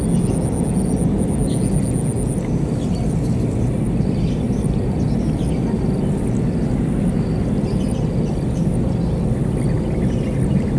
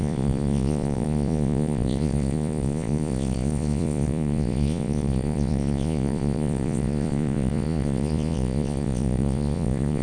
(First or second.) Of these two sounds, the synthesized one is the second